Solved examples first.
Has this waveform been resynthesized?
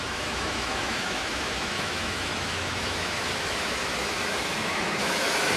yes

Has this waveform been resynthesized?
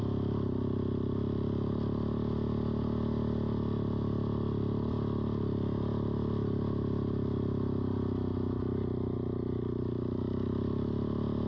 no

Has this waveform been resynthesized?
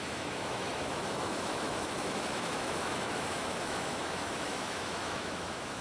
yes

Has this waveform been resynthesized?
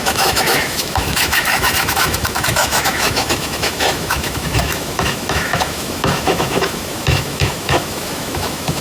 yes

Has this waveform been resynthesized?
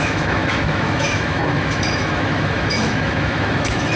yes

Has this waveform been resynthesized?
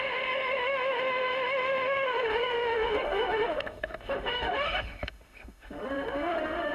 yes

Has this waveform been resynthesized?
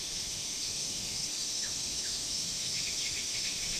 yes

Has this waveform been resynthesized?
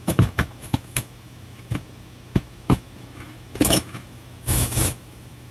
yes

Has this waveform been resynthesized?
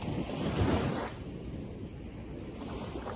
no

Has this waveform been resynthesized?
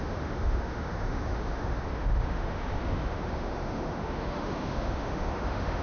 yes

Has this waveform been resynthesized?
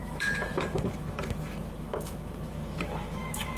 yes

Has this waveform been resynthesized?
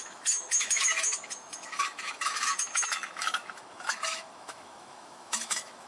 yes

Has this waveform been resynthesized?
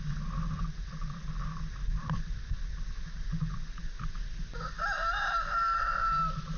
no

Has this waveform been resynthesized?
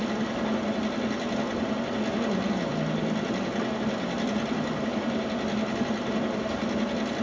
no